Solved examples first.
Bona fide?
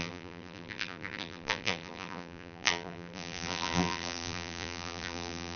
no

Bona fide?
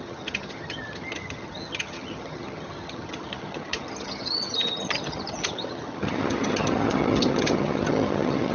no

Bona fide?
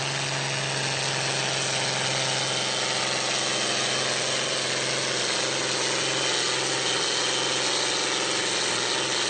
yes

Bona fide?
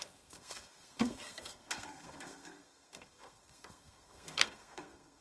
no